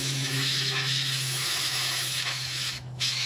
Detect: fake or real fake